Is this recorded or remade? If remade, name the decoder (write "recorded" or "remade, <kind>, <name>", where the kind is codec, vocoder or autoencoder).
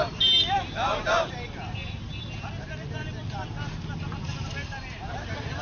recorded